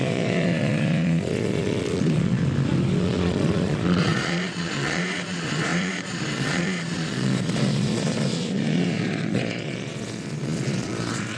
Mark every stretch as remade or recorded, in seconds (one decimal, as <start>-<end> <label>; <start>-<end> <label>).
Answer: 0.0-2.4 remade; 2.4-3.0 recorded; 3.0-11.4 remade